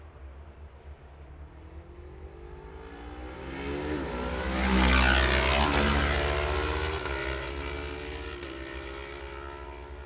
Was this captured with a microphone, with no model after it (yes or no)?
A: yes